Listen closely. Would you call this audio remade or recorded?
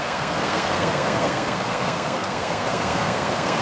remade